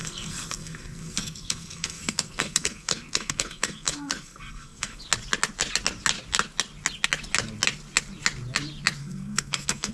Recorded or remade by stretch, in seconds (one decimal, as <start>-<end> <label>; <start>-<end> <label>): 0.0-5.0 remade; 5.0-9.0 recorded; 9.0-9.9 remade